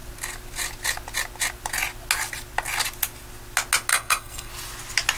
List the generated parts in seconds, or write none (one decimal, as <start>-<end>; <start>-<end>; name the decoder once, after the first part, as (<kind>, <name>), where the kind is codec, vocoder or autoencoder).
3.9-4.5 (codec, SNAC)